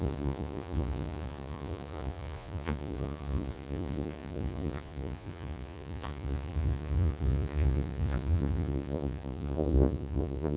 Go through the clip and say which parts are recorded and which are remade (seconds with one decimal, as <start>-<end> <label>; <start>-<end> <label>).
0.0-10.6 remade